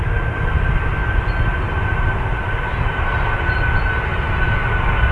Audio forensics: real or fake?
real